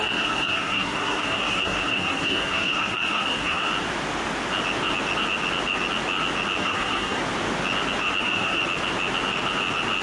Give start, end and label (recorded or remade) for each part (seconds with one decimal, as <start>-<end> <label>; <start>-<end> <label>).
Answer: 0.0-3.7 remade; 3.7-6.6 recorded; 6.6-7.2 remade; 7.2-8.2 recorded; 8.2-8.6 remade; 8.6-10.0 recorded